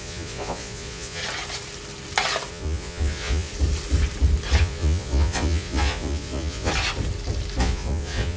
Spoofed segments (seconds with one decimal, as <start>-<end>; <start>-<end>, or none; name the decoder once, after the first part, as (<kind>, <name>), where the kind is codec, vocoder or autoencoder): 0.0-1.2 (vocoder, Vocos); 2.5-3.5; 4.6-6.7; 7.6-8.4